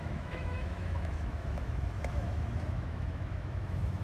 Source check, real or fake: fake